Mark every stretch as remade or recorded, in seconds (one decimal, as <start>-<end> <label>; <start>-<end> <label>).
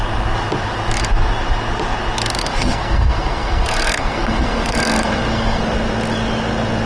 0.0-2.4 recorded; 2.4-5.6 remade; 5.6-6.9 recorded